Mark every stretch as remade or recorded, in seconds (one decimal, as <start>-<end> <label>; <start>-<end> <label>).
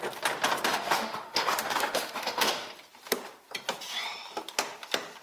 0.0-0.7 recorded; 0.7-2.7 remade; 2.7-5.2 recorded